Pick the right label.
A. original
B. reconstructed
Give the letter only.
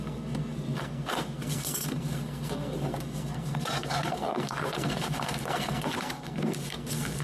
B